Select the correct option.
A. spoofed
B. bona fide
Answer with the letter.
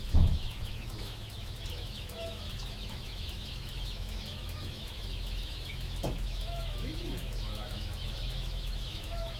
A